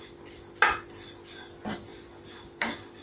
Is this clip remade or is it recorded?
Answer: recorded